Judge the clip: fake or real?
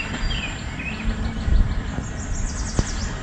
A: real